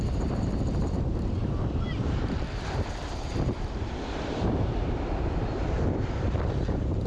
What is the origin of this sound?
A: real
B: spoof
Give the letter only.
B